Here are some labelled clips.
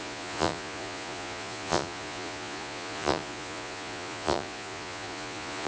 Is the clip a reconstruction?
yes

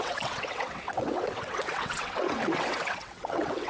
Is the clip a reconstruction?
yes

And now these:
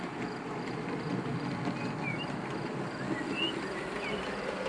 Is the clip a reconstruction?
no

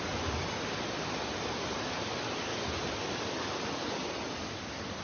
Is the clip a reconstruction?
no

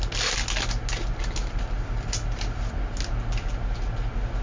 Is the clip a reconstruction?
no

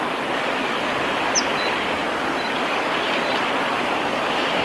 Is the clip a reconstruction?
yes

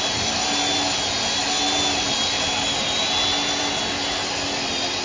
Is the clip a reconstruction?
no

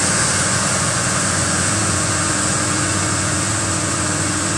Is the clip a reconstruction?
yes